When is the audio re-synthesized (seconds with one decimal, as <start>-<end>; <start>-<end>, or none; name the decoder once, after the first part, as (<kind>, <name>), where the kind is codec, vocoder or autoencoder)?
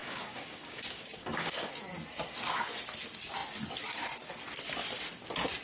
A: 0.0-1.7 (codec, DAC)